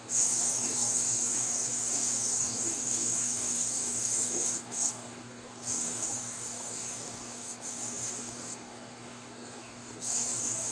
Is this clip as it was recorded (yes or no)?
no